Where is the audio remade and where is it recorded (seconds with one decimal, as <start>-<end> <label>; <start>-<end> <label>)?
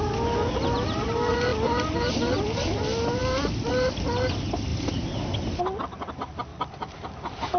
0.0-6.5 recorded; 6.5-7.6 remade